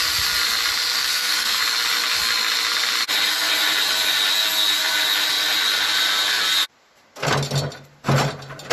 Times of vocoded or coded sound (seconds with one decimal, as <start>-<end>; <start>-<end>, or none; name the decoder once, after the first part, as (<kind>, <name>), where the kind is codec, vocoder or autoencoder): 1.0-1.6 (codec, SNAC)